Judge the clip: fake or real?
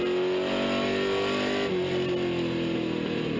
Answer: real